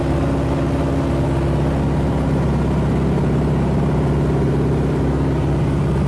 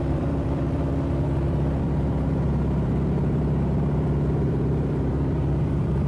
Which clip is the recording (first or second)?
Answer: first